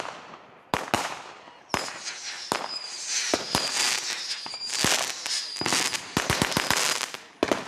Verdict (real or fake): real